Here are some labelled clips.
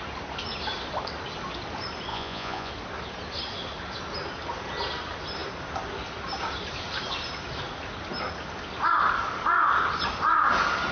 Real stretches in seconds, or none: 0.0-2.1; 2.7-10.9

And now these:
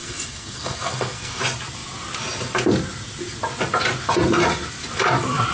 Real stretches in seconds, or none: 1.4-5.5

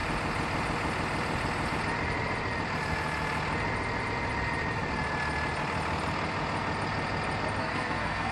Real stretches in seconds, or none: 0.0-7.6

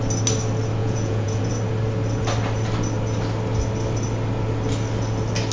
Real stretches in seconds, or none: 0.0-0.8; 1.5-5.5

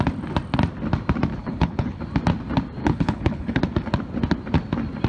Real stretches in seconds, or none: 0.0-1.4; 2.0-2.8; 3.6-5.1

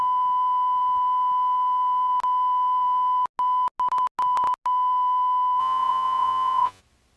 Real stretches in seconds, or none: 0.0-5.6; 6.8-7.2

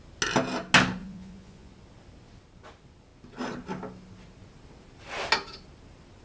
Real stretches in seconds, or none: 0.0-1.0; 1.7-6.2

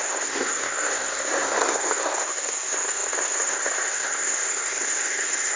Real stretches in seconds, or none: none